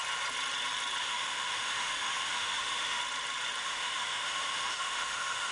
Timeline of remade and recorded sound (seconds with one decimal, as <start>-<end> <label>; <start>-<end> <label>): 0.0-1.0 recorded; 1.0-3.0 remade; 3.0-3.6 recorded; 3.6-5.5 remade